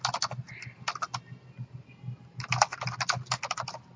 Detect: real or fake real